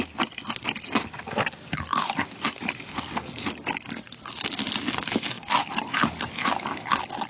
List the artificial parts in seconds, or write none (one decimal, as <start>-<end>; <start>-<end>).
none